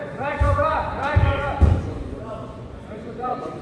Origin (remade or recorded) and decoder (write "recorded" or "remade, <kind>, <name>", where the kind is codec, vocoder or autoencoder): remade, vocoder, Vocos